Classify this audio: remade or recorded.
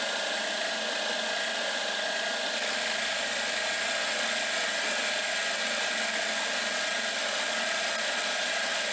recorded